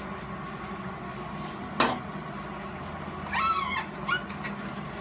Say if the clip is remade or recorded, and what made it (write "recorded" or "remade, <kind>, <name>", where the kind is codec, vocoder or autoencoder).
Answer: recorded